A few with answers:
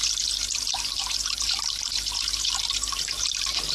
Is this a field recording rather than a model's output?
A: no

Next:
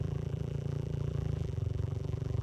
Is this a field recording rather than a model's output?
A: no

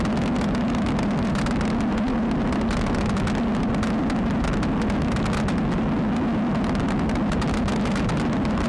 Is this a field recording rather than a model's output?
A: yes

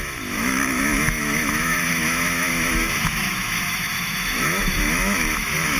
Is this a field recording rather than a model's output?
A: no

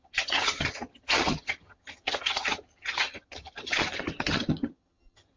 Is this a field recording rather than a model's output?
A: no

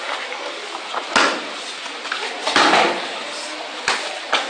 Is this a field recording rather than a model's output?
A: yes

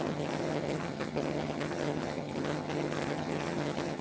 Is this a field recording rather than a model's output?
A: no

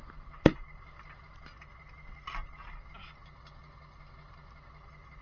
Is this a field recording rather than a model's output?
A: yes